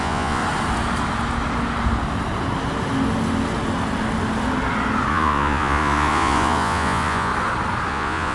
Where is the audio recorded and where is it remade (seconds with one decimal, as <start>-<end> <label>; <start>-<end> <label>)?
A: 0.0-0.4 remade; 0.4-5.1 recorded; 5.1-7.3 remade; 7.3-7.9 recorded; 7.9-8.3 remade